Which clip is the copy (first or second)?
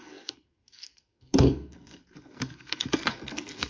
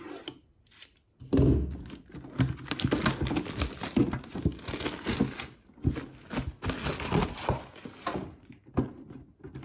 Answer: first